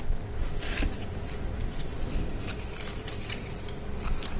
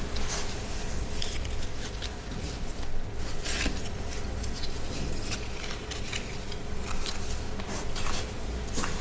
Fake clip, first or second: first